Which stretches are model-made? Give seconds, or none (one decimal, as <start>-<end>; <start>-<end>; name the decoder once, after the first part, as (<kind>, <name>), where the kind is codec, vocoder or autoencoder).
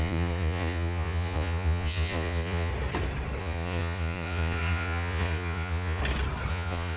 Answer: 0.0-2.7 (vocoder, Vocos); 3.4-6.0; 6.5-7.0